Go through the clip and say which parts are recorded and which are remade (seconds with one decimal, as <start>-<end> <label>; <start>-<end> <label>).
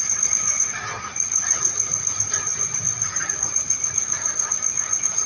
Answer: 0.0-5.3 recorded